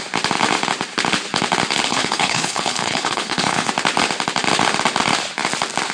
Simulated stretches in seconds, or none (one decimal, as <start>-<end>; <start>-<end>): 1.9-3.7